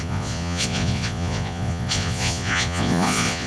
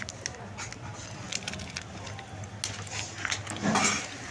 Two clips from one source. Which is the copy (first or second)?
first